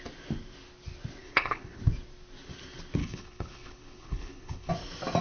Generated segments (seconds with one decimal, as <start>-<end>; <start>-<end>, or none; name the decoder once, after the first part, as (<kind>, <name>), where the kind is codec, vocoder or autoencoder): 1.2-1.8 (codec, HILCodec); 3.0-4.7